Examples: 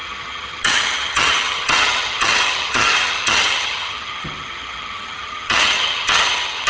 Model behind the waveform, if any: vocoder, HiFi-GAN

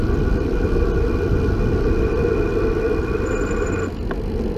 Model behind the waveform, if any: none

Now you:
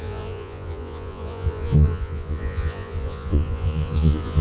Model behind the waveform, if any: vocoder, Vocos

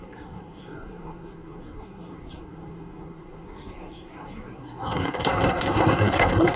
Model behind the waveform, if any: codec, SNAC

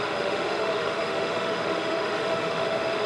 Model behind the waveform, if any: autoencoder, DAC-VAE